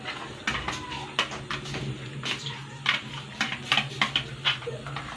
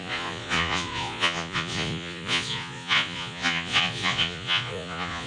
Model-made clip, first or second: second